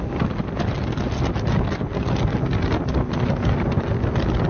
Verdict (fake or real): real